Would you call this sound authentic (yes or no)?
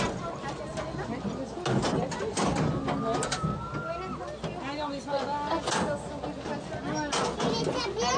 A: yes